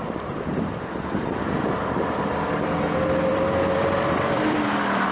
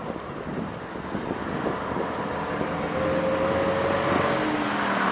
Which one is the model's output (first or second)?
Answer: first